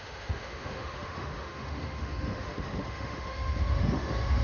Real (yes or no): no